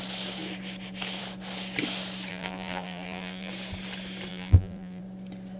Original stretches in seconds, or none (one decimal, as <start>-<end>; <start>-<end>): 0.0-2.3; 3.5-4.3; 5.0-5.6